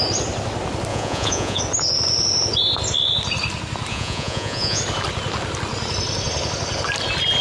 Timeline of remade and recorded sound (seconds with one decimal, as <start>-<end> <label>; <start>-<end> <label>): 0.0-0.9 recorded; 0.9-1.6 remade; 1.6-3.9 recorded; 3.9-4.8 remade; 4.8-7.4 recorded